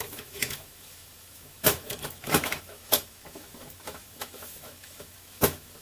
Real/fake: fake